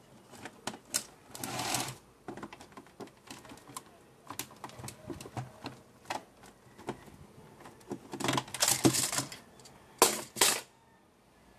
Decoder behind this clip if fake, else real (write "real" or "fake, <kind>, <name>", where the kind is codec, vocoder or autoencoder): real